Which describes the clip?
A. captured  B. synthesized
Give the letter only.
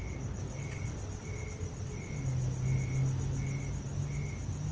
A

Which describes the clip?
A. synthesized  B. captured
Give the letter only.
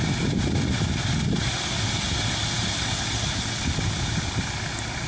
B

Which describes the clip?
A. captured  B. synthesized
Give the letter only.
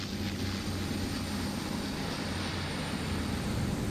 A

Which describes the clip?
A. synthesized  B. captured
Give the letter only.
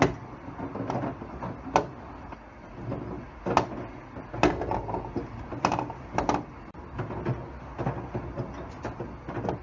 B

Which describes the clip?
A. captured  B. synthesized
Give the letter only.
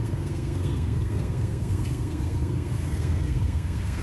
B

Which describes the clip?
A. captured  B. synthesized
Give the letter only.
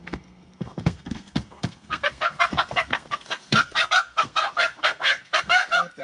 B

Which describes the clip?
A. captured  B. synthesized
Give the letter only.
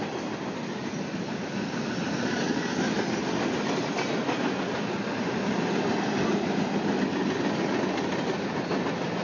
A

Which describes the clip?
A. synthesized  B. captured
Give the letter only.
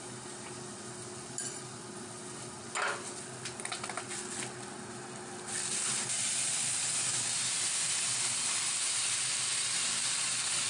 B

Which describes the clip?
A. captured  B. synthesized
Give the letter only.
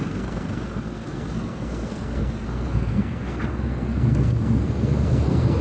B